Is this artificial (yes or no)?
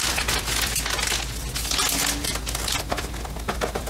no